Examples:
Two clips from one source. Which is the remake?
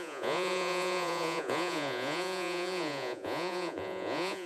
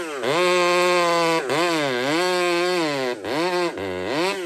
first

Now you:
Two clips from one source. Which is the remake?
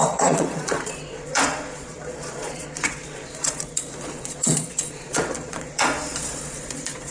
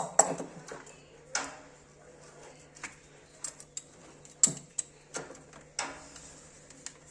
first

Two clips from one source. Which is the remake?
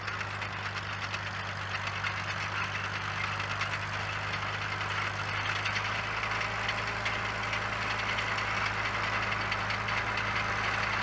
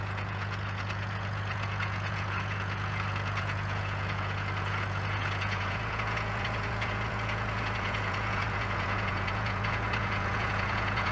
second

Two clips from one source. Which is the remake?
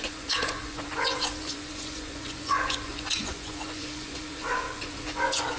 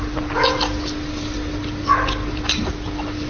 first